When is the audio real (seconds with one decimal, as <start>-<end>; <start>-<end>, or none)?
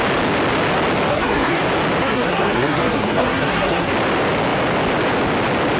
0.0-1.1; 1.6-2.0; 3.9-5.8